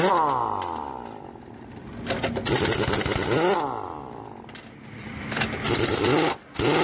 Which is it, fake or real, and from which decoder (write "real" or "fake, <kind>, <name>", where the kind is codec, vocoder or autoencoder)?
real